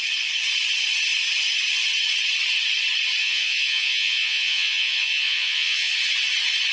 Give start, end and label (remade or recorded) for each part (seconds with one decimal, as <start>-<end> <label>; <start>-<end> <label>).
0.0-3.2 recorded; 3.2-5.9 remade; 5.9-6.7 recorded